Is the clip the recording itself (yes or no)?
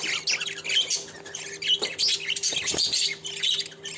yes